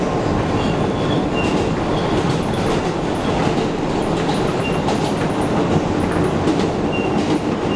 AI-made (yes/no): no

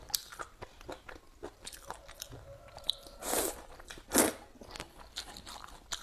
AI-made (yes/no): no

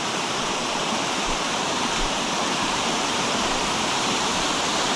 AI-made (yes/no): yes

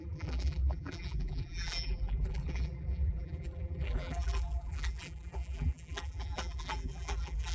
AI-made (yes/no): yes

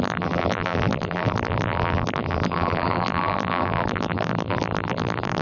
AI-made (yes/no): yes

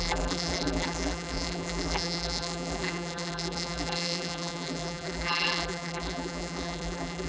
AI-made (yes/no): yes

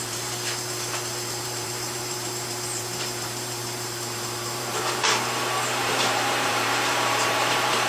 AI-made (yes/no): yes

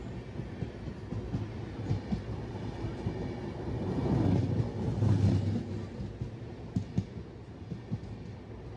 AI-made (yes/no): no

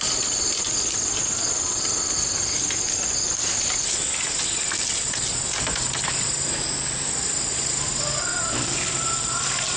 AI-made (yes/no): yes